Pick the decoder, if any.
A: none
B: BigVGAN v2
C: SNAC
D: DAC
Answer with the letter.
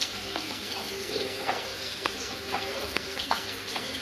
C